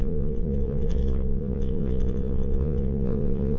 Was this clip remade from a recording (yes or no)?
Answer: yes